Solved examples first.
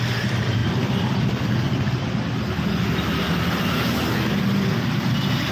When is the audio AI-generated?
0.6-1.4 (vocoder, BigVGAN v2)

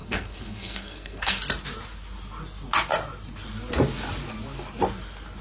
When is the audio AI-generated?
0.0-1.4 (codec, SNAC)

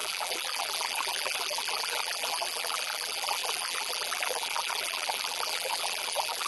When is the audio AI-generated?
0.0-6.5 (vocoder, BigVGAN v2)

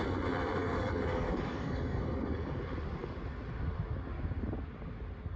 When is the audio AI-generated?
0.6-2.6 (codec, DAC)

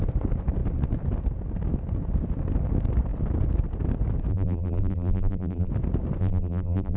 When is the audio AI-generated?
4.3-5.7 (vocoder, BigVGAN v2); 6.2-7.0

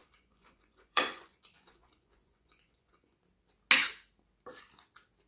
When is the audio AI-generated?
0.0-3.2 (vocoder, Vocos)

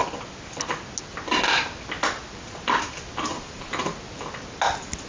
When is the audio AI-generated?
3.3-3.8 (vocoder, BigVGAN v2)